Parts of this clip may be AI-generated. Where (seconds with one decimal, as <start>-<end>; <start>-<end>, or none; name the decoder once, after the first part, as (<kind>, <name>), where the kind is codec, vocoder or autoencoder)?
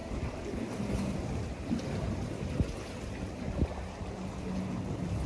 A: none